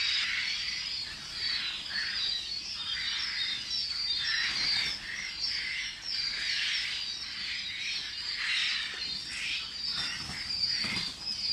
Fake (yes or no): no